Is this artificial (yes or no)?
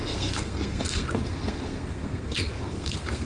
yes